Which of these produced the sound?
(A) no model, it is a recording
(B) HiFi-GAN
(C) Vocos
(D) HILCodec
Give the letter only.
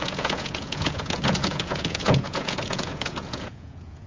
C